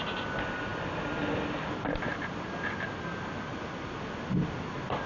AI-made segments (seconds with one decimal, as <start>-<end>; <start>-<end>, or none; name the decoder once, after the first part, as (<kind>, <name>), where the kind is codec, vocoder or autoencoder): none